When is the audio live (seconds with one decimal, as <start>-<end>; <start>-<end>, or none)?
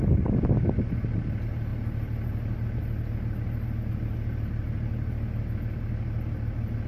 0.0-6.9